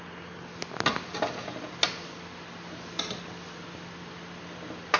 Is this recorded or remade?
recorded